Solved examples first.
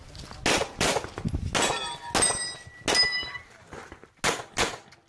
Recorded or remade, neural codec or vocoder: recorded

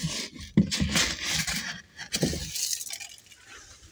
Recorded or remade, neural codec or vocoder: recorded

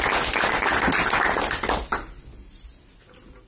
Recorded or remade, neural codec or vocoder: recorded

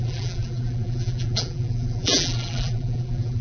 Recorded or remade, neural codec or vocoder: remade, vocoder, BigVGAN v2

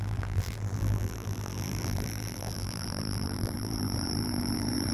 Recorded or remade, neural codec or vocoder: remade, vocoder, BigVGAN v2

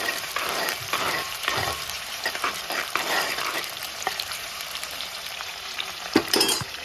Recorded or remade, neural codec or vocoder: remade, vocoder, BigVGAN v2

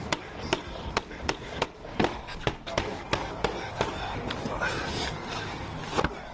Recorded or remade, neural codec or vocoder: recorded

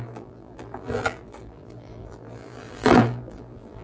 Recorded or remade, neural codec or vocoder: remade, vocoder, BigVGAN v2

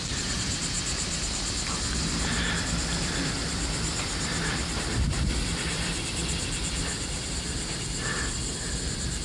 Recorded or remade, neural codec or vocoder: remade, vocoder, BigVGAN v2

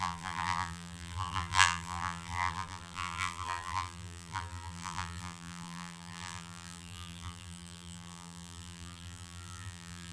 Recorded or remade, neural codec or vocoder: remade, vocoder, BigVGAN v2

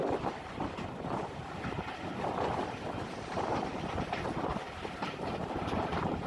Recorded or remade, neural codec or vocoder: remade, vocoder, BigVGAN v2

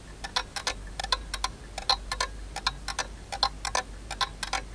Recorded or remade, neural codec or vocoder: recorded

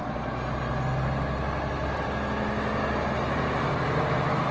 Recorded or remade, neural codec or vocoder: recorded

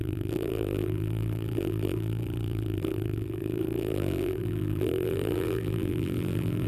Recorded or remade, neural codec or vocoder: remade, vocoder, BigVGAN v2